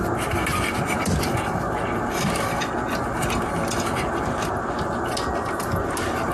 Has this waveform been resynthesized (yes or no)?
no